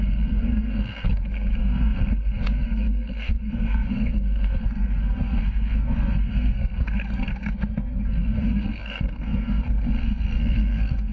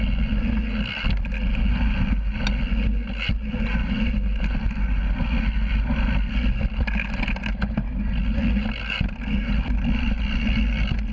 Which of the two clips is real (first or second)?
second